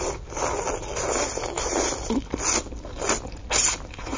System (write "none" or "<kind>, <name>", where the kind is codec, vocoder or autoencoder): none